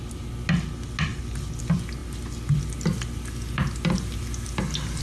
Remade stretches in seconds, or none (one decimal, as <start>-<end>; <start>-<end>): none